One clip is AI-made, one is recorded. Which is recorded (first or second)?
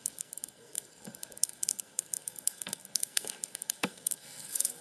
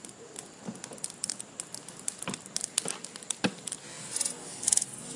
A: second